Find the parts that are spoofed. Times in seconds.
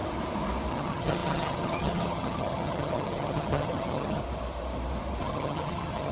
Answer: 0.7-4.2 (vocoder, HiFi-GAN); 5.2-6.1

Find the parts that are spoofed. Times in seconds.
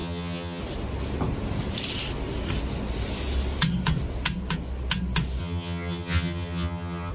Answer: 0.0-0.6 (vocoder, HiFi-GAN); 5.4-7.1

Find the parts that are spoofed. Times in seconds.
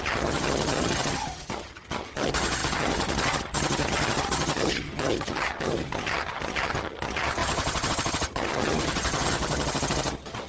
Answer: 0.0-10.5 (vocoder, HiFi-GAN)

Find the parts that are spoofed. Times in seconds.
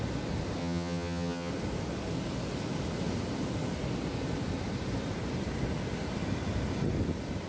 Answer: 0.6-1.5 (vocoder, HiFi-GAN)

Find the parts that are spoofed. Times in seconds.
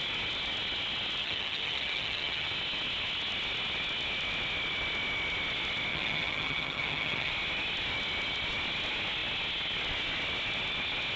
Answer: 1.2-2.5 (vocoder, HiFi-GAN); 5.9-7.3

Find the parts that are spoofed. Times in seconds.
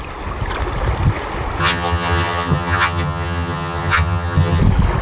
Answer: 1.6-4.6 (vocoder, HiFi-GAN)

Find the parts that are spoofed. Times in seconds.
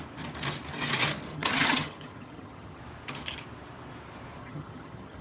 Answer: 1.3-2.8 (vocoder, HiFi-GAN); 4.4-5.2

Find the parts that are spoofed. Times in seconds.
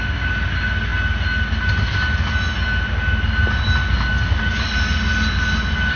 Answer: none